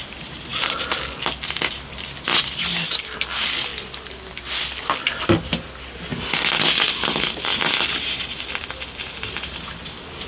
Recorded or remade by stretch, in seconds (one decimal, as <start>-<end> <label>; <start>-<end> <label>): 0.0-10.3 recorded